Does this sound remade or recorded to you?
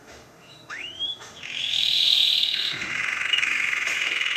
remade